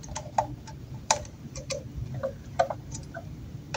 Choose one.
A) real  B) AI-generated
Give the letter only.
B